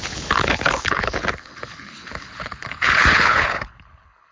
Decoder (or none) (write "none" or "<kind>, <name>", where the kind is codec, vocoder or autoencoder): codec, HILCodec